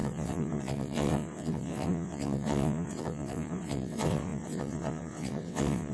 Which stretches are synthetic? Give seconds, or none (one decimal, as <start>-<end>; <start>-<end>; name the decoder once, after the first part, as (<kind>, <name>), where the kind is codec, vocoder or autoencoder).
0.0-5.9 (vocoder, WaveNeXt)